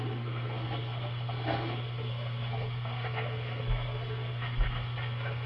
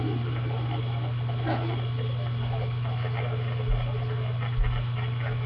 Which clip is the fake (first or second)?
first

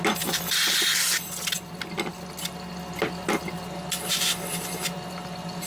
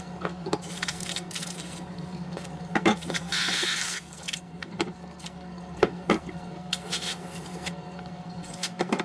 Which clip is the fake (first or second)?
second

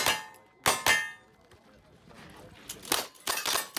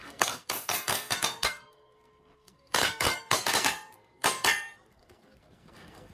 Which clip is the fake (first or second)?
second